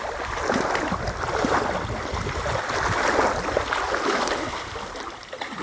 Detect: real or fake real